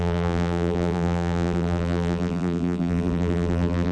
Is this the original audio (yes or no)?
no